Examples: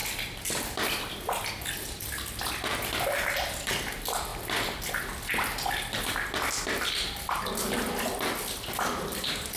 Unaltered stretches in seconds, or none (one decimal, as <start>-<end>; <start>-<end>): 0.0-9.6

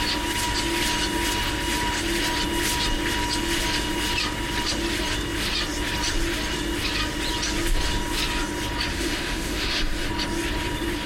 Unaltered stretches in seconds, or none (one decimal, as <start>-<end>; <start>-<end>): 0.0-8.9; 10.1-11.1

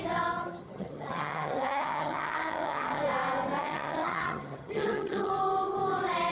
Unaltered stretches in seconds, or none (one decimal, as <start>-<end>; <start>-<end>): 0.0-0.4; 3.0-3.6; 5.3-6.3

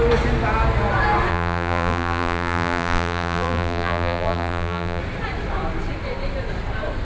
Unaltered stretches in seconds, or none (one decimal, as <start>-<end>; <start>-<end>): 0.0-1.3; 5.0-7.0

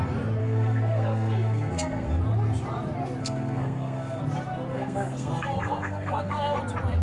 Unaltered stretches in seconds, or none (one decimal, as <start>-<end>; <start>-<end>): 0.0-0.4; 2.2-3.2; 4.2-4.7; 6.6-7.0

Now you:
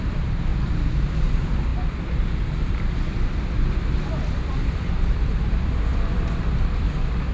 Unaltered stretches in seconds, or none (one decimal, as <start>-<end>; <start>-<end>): 0.5-1.1